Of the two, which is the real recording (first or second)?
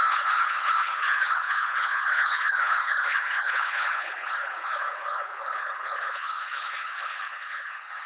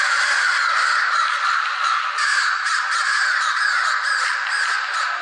second